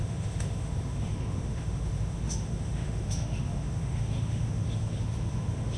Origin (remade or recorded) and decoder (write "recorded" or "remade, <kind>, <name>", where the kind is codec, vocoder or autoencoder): remade, autoencoder, DAC-VAE